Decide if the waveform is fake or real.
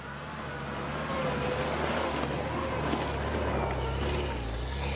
real